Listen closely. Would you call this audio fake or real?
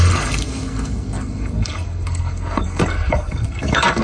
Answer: fake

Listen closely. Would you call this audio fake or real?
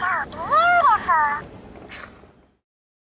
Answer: real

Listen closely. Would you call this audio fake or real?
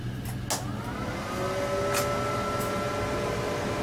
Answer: real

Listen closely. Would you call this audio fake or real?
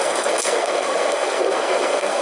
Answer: fake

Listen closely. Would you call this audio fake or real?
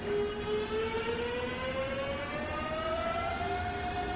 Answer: real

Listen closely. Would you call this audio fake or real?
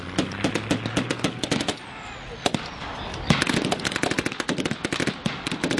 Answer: real